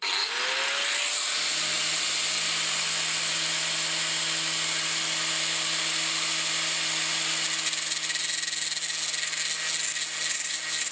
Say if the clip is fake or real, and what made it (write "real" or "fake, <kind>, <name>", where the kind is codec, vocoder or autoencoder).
real